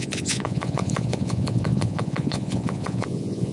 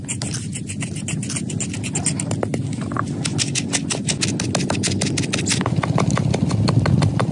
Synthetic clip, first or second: first